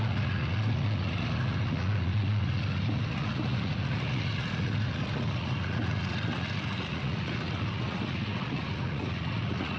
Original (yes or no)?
no